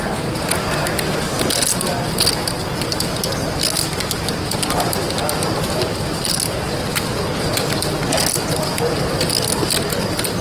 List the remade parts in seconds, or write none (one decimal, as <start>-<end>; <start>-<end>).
3.9-7.5; 8.1-8.8